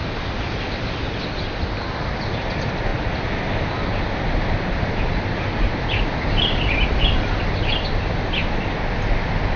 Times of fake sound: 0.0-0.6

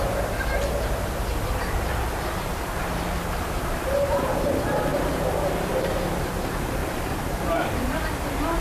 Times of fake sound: 2.5-4.4; 6.8-8.1

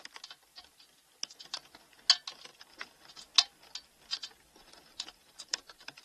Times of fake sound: 2.5-3.2; 4.1-6.0

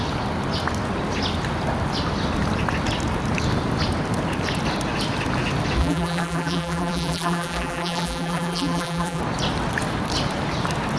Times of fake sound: 5.8-9.2

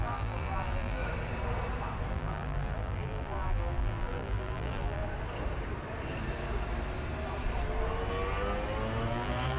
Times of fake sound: 0.0-1.0; 2.1-5.0; 9.1-9.6

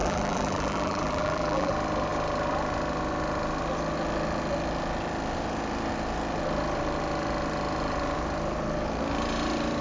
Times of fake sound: 0.0-1.7